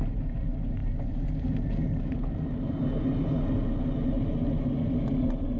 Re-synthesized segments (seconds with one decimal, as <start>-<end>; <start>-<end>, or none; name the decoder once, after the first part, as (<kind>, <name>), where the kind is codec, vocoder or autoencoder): none